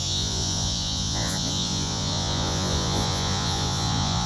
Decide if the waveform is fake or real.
fake